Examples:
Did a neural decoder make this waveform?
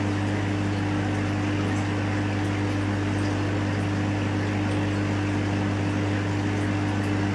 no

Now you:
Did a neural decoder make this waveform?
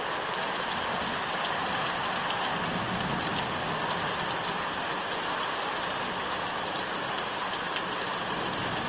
no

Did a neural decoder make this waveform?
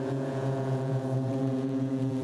yes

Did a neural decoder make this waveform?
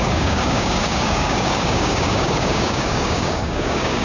yes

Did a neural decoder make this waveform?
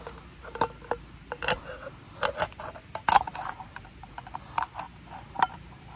no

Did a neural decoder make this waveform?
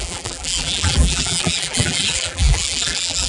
yes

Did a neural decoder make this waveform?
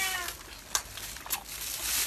no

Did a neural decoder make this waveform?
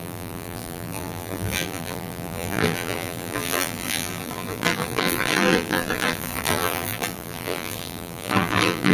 yes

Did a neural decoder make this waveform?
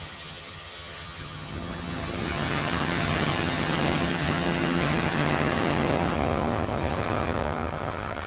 yes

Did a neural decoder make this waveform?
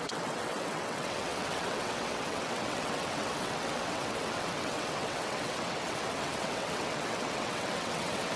yes